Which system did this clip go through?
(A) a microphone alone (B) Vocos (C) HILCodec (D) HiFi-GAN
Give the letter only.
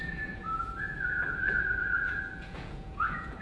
B